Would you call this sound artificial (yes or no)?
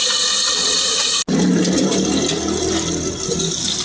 no